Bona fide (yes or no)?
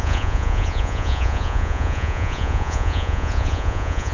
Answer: no